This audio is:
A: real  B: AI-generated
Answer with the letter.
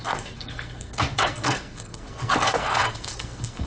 B